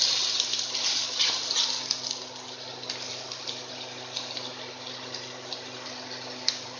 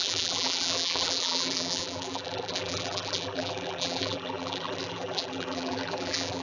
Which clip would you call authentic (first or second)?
first